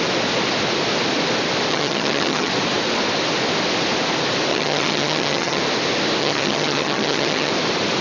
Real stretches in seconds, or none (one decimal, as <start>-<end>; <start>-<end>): 0.0-1.7; 2.5-4.5; 5.6-6.2; 7.5-8.0